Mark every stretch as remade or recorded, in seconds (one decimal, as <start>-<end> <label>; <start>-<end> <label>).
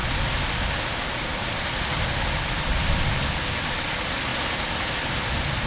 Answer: 0.0-5.7 recorded